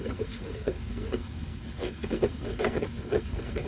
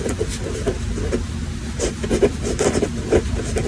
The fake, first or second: first